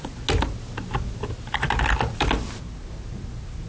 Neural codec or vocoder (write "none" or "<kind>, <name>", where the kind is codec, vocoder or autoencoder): none